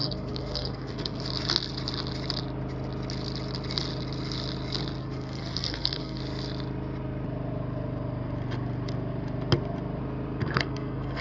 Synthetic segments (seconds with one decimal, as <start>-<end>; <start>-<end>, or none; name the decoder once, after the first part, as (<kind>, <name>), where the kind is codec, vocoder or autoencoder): 0.0-1.2 (codec, SNAC); 5.0-6.2; 10.4-11.2